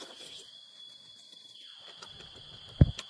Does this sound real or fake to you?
real